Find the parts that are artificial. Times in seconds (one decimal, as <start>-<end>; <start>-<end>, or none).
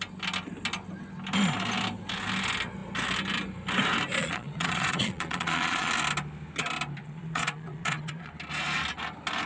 4.2-5.9; 7.0-8.3